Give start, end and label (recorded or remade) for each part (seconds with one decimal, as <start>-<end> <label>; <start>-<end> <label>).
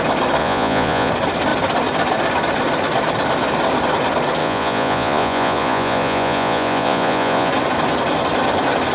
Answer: 0.0-0.4 recorded; 0.4-1.1 remade; 1.1-4.4 recorded; 4.4-7.5 remade; 7.5-8.9 recorded